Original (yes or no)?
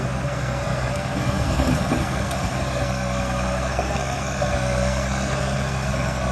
no